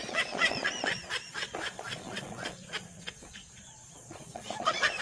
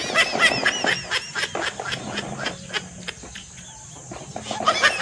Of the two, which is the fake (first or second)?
first